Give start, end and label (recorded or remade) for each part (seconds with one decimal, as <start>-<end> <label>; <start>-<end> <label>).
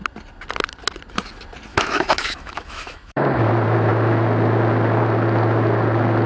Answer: 0.0-1.7 recorded; 1.7-3.2 remade; 3.2-6.3 recorded